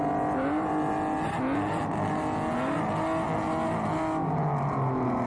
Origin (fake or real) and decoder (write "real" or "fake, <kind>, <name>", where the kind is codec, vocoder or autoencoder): real